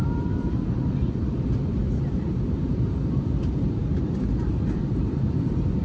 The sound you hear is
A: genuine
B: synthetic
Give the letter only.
B